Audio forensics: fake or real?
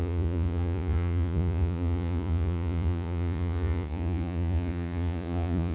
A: fake